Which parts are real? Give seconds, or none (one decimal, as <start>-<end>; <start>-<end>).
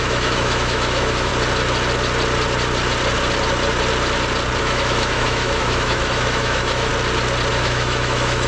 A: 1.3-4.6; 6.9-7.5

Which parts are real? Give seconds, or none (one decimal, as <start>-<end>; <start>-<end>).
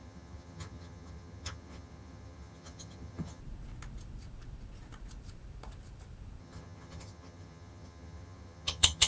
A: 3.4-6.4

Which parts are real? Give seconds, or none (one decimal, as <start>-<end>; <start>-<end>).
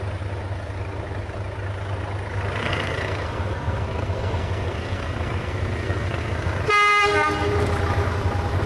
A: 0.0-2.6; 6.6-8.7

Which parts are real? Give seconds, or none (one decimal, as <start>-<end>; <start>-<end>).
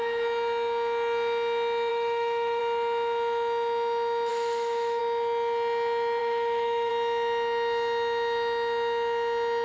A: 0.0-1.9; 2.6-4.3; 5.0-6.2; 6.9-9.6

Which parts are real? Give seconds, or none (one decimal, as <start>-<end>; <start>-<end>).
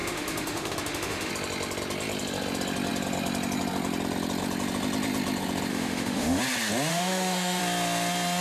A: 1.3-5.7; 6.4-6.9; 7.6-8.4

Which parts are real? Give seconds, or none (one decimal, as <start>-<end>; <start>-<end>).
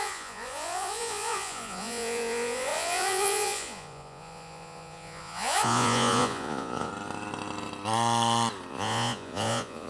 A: 6.9-8.7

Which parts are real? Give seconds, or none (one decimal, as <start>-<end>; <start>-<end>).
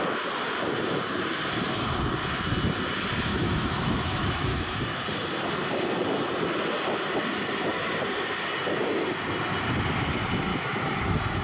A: 0.0-3.3; 5.0-10.5; 11.0-11.4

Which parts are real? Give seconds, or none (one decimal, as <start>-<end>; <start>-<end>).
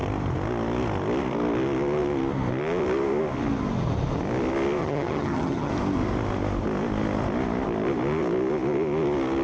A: 0.0-4.8; 5.7-9.4